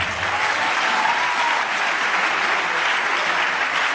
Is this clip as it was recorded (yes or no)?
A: yes